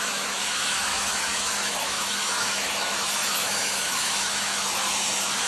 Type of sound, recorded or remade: remade